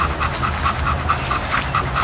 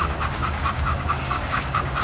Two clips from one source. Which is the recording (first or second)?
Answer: first